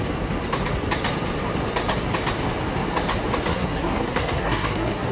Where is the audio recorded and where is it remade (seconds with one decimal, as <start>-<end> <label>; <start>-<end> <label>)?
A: 0.0-3.5 recorded; 3.5-5.1 remade